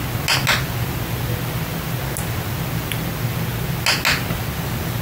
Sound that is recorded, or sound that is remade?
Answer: recorded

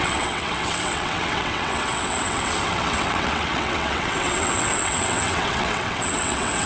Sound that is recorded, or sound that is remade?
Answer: remade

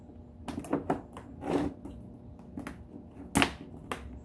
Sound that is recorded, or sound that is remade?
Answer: recorded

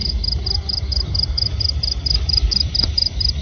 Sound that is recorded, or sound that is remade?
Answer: recorded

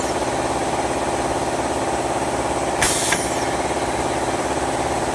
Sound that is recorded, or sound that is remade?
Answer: recorded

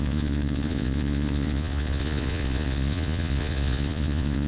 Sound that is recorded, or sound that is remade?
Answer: remade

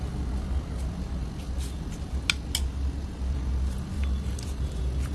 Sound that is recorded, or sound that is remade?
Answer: recorded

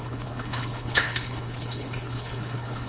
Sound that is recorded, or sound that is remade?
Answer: remade